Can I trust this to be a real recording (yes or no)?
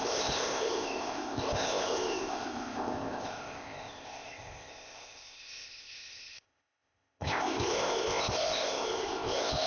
no